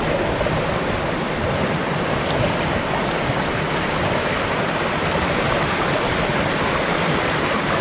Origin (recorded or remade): recorded